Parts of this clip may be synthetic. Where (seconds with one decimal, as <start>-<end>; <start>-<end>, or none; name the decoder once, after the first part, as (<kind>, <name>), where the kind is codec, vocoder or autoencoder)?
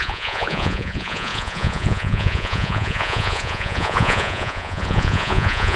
0.0-5.8 (vocoder, Vocos)